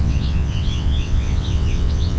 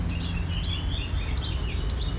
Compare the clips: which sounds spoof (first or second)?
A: first